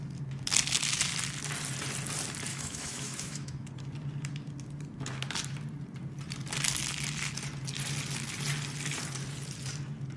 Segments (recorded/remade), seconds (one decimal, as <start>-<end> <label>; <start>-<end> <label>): 0.0-2.5 recorded; 2.5-3.7 remade; 3.7-10.2 recorded